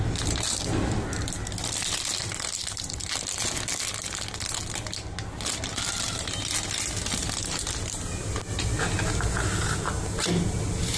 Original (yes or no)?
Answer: yes